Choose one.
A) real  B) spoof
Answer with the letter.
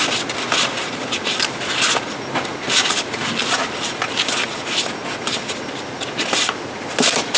A